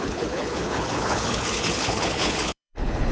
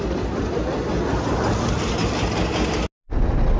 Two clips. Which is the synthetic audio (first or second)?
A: first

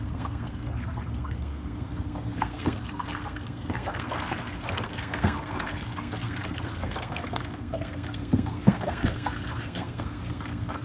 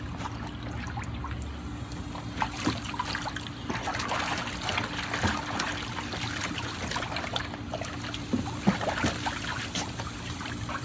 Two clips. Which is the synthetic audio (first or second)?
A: first